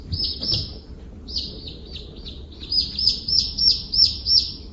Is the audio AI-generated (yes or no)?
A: no